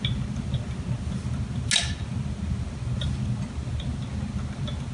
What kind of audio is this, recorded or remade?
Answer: recorded